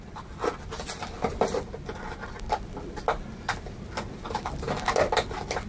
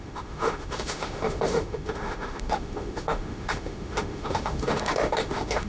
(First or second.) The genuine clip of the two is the first